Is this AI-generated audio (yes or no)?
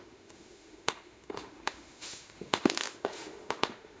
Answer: yes